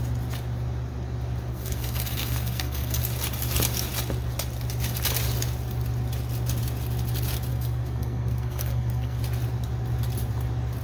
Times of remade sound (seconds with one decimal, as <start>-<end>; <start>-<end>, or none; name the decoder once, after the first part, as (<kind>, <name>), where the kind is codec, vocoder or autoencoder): 1.5-3.0 (codec, SNAC); 7.5-9.2